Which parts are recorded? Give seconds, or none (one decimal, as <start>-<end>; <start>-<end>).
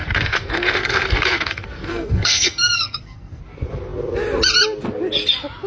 3.4-5.7